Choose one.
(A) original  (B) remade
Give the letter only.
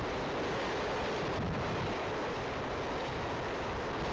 A